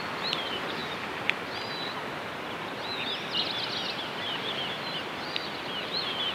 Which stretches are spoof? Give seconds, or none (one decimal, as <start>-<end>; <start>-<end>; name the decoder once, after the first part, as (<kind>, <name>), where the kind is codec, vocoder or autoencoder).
none